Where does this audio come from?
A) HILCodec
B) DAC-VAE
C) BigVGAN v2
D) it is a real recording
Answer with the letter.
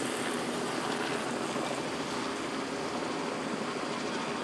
D